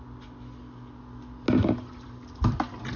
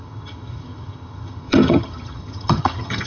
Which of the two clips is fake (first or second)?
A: second